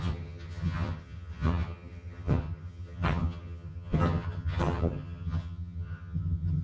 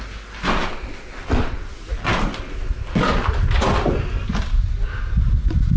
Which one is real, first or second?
second